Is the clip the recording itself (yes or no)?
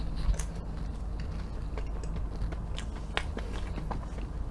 yes